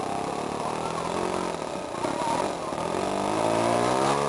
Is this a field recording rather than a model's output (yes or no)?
yes